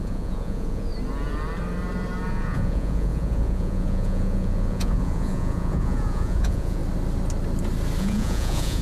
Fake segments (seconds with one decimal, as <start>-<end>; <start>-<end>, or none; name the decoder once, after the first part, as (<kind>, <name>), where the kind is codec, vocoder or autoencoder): 0.0-0.9 (vocoder, Vocos); 2.3-6.8; 8.0-8.8